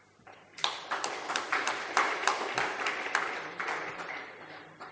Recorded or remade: recorded